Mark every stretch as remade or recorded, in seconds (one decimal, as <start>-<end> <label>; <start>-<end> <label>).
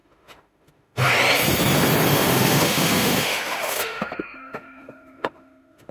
0.0-1.1 remade; 1.1-2.1 recorded; 2.1-5.9 remade